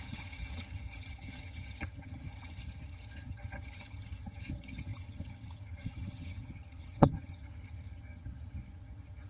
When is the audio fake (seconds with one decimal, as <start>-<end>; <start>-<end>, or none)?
0.0-9.3